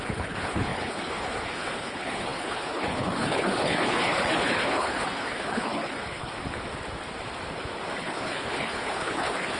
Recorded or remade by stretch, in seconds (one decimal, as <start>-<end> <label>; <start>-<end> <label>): 0.0-6.3 remade; 6.3-8.0 recorded; 8.0-9.6 remade